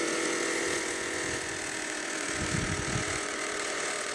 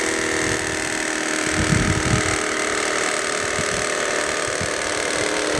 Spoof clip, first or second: first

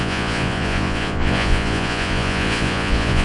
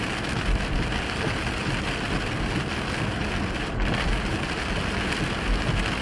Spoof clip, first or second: first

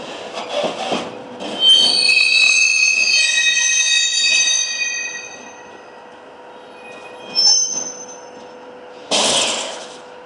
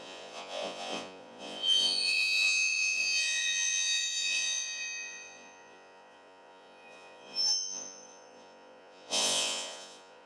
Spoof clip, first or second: second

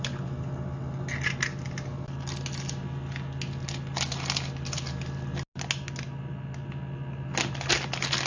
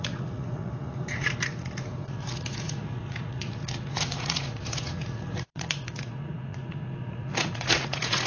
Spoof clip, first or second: second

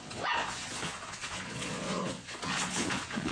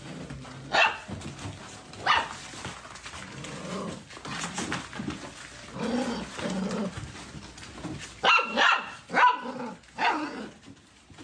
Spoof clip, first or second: first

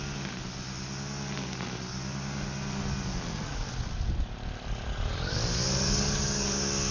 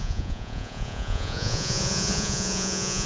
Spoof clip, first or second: second